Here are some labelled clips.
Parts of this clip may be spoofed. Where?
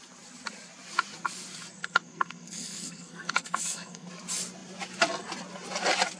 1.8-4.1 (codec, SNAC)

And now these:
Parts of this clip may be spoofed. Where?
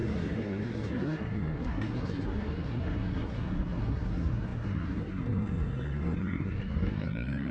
0.0-7.5 (codec, SNAC)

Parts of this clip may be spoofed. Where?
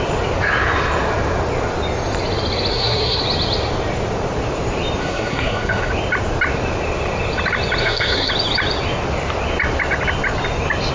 2.7-3.2 (codec, SNAC); 5.0-5.9; 7.8-8.3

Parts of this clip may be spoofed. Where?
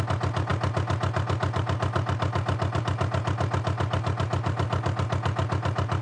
none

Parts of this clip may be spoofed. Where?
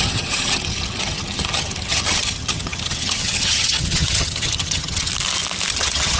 0.0-5.1 (vocoder, HiFi-GAN); 5.7-6.2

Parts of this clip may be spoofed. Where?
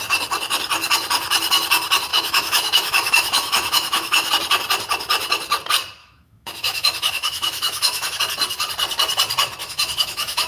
2.1-4.3 (autoencoder, DAC-VAE); 6.0-8.2; 9.6-10.5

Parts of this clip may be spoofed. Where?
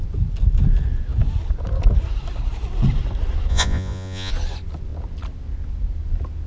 3.5-4.3 (vocoder, Vocos)